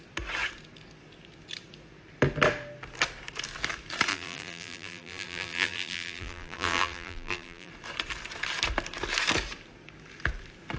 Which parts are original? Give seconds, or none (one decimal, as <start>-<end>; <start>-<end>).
0.0-4.1; 7.7-10.8

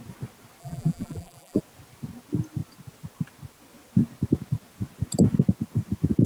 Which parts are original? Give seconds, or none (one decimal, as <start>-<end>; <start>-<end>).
0.0-0.6; 1.6-6.3

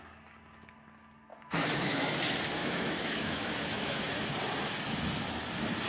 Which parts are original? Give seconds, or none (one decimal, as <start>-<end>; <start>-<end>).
0.0-1.3; 2.1-2.6; 4.0-5.9

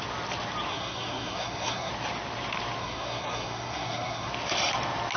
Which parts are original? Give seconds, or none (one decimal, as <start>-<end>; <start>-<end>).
0.0-0.7; 1.9-2.8; 4.3-5.2

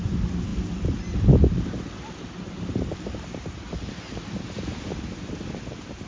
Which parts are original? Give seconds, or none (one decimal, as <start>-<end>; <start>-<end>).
0.0-6.1